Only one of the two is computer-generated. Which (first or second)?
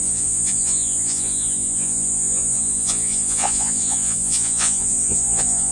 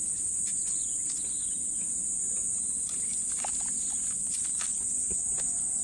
first